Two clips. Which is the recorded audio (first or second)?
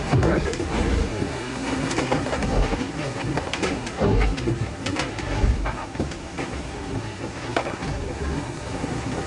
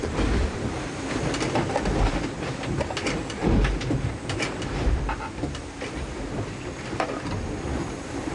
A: second